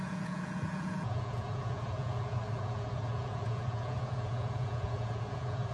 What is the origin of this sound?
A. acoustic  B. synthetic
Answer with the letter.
B